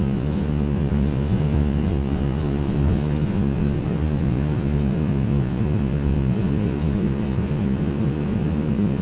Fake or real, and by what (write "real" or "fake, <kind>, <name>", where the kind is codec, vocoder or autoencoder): fake, vocoder, Vocos